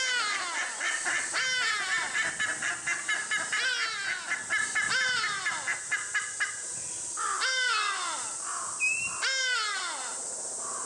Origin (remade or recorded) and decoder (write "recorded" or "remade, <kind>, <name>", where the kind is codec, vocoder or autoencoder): recorded